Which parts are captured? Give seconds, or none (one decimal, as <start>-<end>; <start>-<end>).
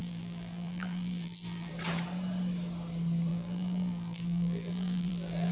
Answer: 1.7-3.3